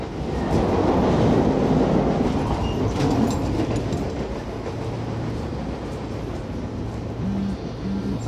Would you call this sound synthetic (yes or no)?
no